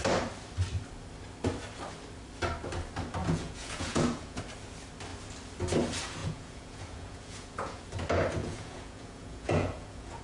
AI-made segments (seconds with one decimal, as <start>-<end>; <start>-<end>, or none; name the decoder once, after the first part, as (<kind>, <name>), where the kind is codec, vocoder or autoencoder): 3.2-4.4 (vocoder, Vocos); 6.2-7.8; 8.4-10.2